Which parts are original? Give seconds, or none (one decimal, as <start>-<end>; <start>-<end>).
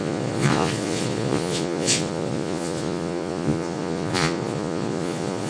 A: none